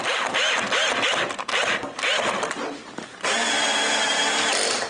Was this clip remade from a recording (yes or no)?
no